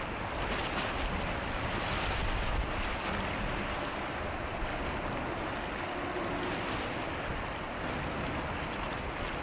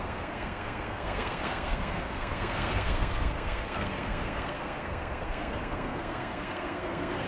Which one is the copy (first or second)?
second